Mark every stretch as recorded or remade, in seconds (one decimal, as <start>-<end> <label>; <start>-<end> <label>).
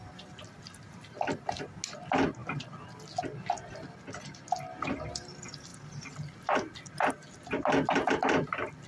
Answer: 0.0-8.9 recorded